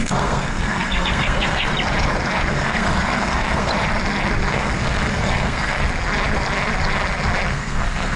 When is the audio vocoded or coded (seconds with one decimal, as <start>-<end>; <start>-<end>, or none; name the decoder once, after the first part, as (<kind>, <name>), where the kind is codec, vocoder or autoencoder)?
0.0-1.7 (codec, SNAC); 2.5-3.7; 4.5-5.8; 7.5-8.2